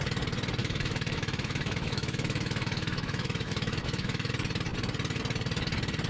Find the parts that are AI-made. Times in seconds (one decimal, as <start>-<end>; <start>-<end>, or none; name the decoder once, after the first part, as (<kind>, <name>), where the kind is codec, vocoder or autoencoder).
0.6-4.3 (autoencoder, DAC-VAE)